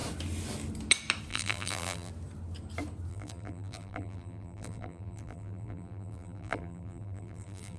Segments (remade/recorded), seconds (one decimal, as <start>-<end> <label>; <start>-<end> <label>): 0.0-1.3 recorded; 1.3-2.1 remade; 2.1-3.1 recorded; 3.1-7.8 remade

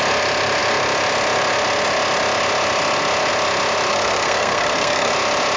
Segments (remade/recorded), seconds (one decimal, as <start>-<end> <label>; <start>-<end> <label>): 0.0-3.9 recorded; 3.9-5.1 remade; 5.1-5.6 recorded

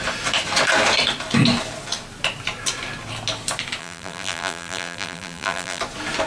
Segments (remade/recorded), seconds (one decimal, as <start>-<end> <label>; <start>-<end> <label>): 0.0-3.8 recorded; 3.8-5.8 remade; 5.8-6.3 recorded